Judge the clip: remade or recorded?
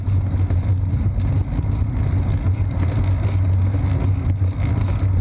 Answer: recorded